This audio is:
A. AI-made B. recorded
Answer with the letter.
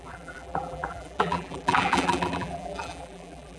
A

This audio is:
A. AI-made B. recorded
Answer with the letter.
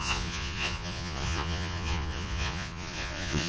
A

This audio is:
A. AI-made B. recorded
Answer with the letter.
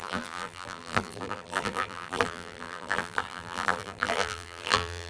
A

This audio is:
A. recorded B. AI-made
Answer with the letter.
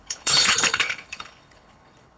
B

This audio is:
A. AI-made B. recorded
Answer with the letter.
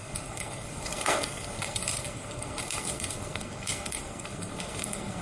A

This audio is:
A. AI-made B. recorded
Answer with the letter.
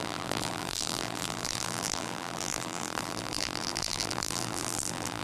A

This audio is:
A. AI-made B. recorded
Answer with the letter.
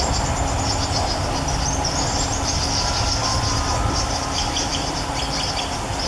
B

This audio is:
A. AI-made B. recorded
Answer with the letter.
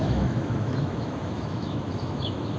A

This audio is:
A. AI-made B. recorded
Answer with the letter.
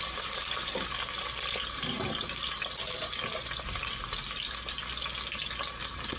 B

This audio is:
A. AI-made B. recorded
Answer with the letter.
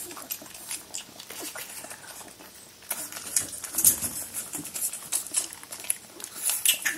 B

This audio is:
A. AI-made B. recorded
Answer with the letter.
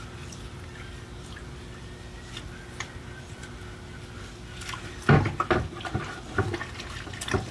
B